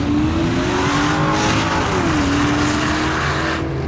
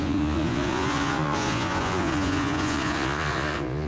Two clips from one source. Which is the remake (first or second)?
second